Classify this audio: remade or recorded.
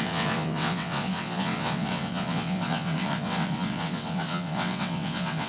remade